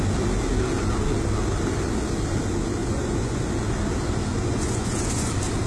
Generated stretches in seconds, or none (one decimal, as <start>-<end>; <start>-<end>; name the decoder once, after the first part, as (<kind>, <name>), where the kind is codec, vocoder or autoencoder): 2.8-3.4 (vocoder, Vocos); 4.5-5.3